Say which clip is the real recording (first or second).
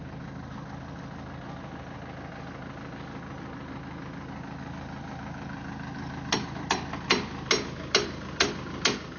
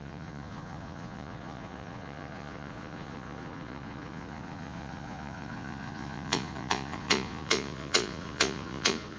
first